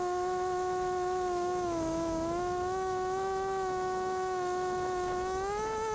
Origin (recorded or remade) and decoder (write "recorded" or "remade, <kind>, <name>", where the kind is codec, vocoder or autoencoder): remade, autoencoder, DAC-VAE